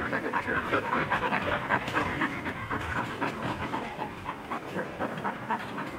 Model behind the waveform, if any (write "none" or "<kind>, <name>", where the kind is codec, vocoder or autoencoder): codec, DAC